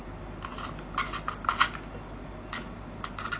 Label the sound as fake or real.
real